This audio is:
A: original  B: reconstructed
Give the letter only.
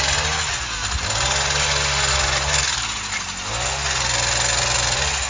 A